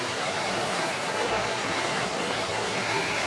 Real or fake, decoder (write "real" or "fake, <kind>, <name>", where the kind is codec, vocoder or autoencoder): fake, codec, SNAC